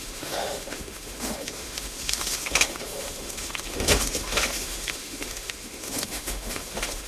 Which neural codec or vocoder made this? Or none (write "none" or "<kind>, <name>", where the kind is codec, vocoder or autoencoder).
autoencoder, DAC-VAE